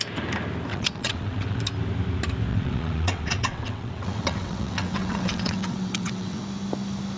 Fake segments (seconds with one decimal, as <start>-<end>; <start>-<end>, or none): 0.7-1.6; 2.5-6.4